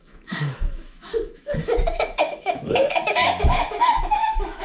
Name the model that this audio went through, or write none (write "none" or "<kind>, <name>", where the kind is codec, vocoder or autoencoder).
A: autoencoder, DAC-VAE